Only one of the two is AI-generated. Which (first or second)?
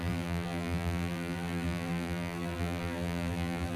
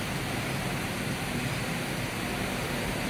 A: first